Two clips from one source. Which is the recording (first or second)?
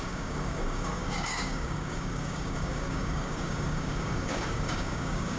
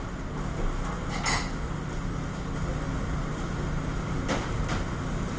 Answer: second